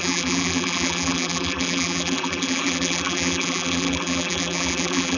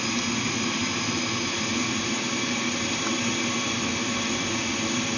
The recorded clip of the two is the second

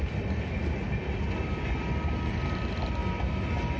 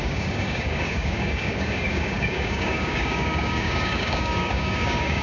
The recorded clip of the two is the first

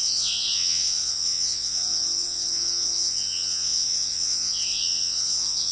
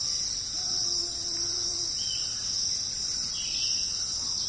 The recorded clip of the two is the second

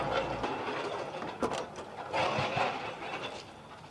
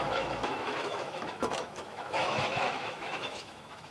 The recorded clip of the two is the first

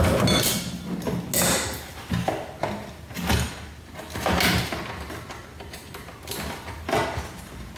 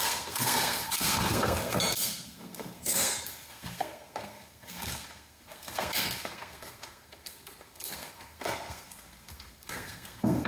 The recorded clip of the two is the first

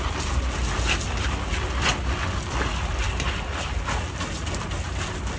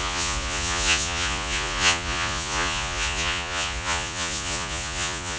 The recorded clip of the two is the first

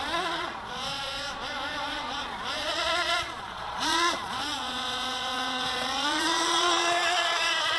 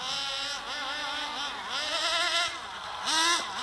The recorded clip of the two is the second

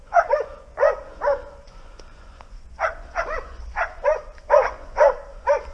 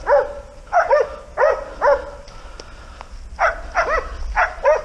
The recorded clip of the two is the second